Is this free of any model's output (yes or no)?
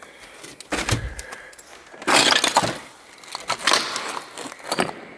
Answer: yes